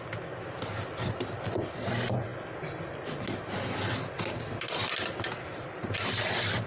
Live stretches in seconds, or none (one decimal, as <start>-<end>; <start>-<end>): 0.0-6.7